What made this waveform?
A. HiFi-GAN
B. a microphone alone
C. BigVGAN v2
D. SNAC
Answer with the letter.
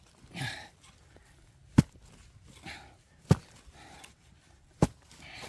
B